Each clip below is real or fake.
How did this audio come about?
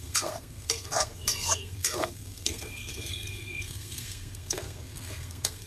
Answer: fake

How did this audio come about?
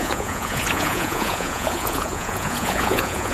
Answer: fake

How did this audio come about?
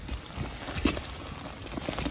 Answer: real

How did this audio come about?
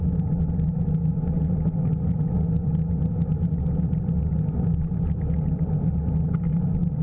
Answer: real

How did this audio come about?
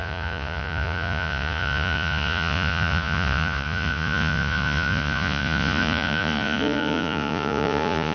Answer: fake